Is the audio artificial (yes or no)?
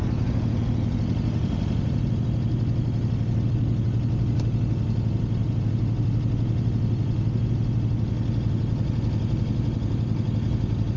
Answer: no